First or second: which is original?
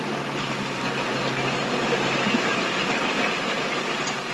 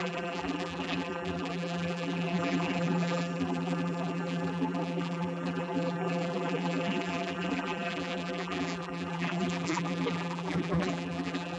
first